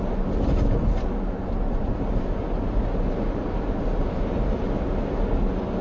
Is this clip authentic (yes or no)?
yes